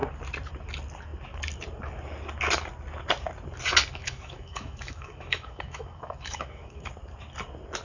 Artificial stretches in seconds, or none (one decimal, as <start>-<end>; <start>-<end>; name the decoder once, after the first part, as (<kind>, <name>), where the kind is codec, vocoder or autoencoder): 4.0-6.9 (autoencoder, DAC-VAE)